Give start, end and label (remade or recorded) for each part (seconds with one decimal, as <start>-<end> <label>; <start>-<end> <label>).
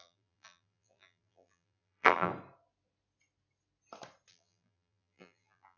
0.0-2.3 remade; 2.3-4.3 recorded; 4.3-5.8 remade